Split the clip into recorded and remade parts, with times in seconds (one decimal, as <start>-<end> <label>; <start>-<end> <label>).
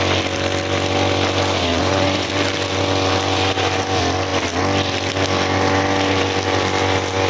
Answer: 0.0-1.7 recorded; 1.7-2.3 remade; 2.3-7.3 recorded